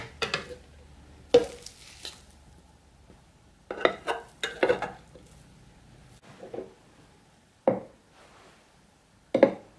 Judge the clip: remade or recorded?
recorded